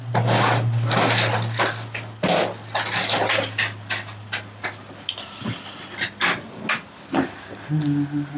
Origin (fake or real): real